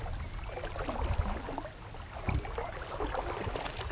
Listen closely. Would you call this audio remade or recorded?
recorded